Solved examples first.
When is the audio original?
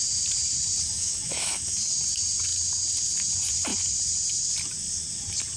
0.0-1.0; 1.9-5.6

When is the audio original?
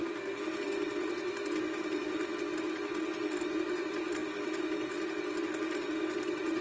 0.0-6.6